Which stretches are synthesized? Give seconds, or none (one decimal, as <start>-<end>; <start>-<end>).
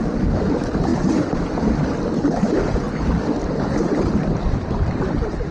0.0-0.9; 4.2-5.5